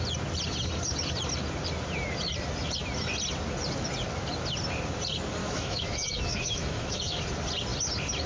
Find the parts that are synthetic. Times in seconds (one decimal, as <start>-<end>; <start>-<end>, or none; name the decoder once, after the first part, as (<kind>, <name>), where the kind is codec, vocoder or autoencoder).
5.4-7.2 (autoencoder, DAC-VAE)